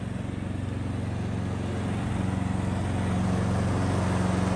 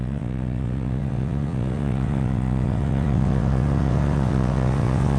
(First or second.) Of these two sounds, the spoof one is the second